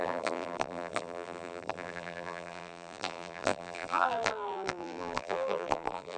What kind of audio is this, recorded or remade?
remade